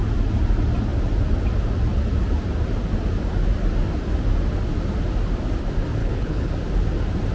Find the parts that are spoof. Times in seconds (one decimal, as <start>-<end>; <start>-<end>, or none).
6.0-6.5